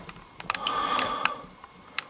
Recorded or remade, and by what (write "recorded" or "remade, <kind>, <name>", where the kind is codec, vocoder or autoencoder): recorded